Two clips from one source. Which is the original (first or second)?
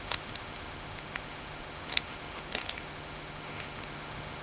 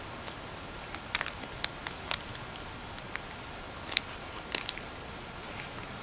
second